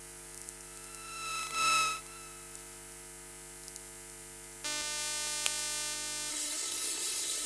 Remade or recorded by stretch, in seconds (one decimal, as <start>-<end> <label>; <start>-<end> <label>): 0.0-6.3 recorded; 6.3-7.5 remade